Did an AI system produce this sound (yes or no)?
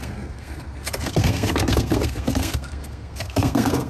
yes